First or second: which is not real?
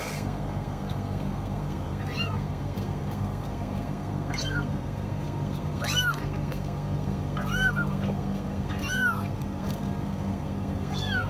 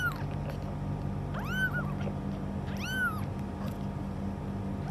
first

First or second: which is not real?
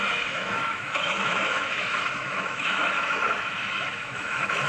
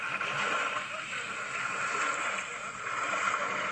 first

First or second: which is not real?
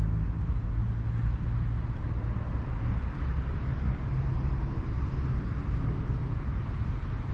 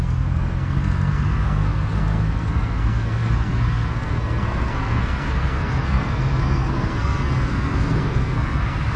second